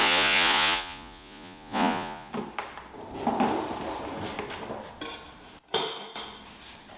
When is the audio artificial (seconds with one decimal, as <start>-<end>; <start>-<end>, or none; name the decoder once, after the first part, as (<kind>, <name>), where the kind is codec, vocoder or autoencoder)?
0.0-2.3 (vocoder, Vocos)